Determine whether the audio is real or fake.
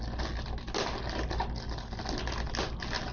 real